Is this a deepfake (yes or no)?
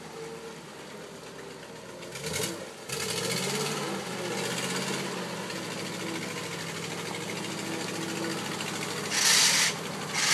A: no